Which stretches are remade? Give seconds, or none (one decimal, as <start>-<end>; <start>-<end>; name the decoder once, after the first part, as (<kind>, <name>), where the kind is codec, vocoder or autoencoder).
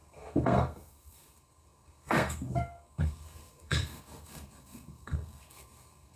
0.0-6.2 (codec, SNAC)